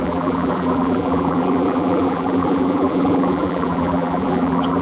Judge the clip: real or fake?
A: fake